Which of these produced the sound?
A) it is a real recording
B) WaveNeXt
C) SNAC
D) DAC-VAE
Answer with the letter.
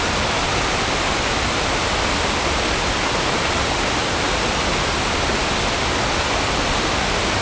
A